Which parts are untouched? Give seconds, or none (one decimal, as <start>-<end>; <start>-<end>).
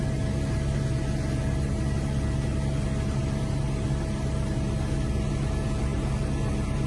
0.0-6.9